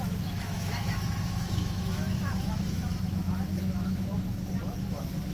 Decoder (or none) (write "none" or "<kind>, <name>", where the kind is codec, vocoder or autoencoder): autoencoder, DAC-VAE